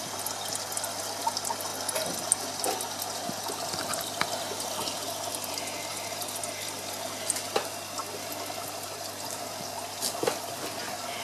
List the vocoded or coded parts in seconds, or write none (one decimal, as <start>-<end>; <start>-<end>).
none